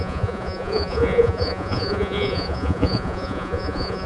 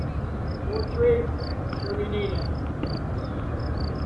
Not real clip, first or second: first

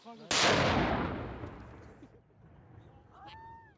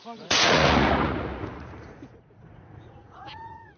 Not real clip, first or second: second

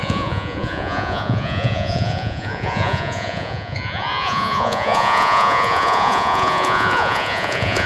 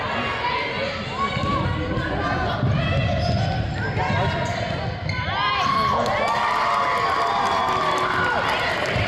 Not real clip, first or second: first